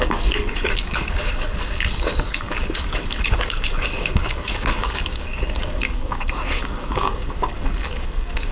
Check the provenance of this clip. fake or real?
fake